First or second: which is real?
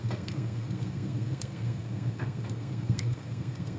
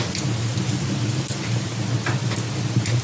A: second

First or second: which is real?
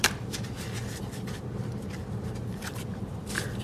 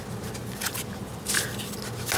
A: second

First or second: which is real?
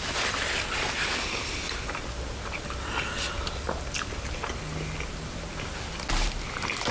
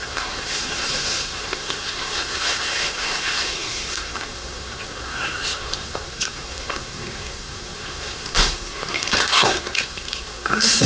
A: first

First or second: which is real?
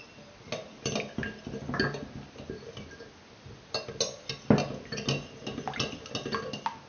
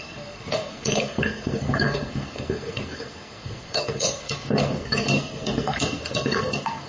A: first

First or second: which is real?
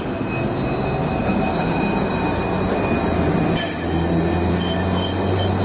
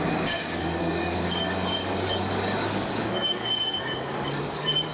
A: first